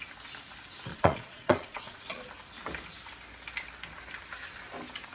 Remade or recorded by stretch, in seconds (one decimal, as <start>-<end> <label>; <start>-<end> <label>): 0.0-0.9 recorded; 0.9-2.2 remade; 2.2-5.1 recorded